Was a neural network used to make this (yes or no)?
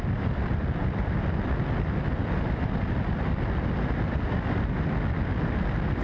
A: no